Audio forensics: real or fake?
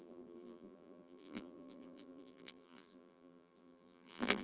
fake